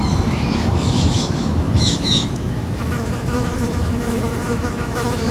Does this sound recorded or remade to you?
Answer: remade